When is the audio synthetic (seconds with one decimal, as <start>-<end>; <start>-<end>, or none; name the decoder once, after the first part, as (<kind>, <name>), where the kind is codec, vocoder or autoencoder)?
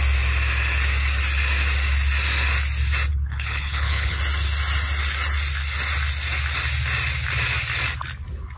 3.1-4.2 (codec, HILCodec)